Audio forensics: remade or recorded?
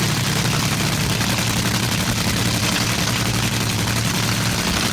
recorded